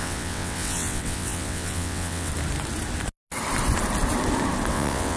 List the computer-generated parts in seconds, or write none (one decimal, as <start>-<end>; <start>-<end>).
0.0-2.3; 4.7-5.2